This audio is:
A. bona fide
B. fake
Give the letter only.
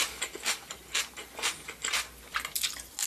A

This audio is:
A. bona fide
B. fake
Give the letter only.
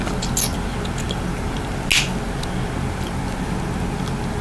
A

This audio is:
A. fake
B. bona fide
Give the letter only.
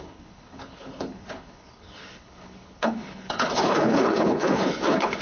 A